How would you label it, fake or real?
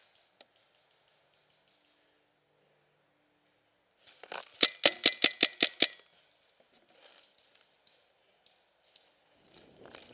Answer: real